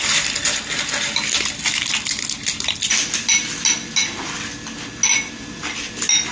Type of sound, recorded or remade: recorded